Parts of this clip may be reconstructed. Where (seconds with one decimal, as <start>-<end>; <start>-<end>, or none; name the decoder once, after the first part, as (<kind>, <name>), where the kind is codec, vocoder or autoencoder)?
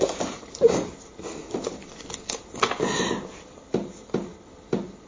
none